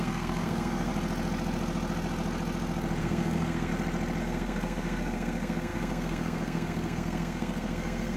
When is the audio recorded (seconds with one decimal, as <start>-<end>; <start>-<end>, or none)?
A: 0.9-3.0; 3.7-4.2